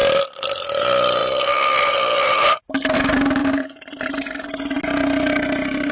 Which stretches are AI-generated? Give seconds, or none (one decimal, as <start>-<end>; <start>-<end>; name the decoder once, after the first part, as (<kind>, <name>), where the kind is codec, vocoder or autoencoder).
3.4-4.8 (vocoder, BigVGAN v2)